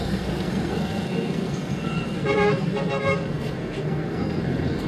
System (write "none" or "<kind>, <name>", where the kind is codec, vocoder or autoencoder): codec, SNAC